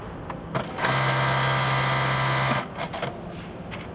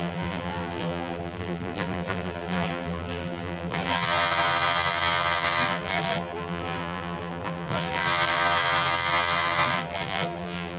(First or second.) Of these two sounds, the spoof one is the second